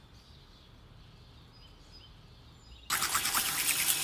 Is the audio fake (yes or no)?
no